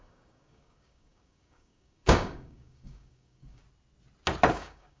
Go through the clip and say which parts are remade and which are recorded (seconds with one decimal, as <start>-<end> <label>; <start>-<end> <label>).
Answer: 0.0-3.6 remade; 3.6-4.5 recorded; 4.5-5.0 remade